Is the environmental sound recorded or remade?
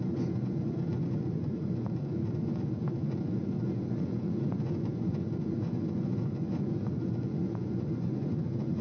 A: remade